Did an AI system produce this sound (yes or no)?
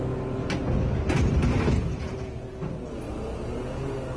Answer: no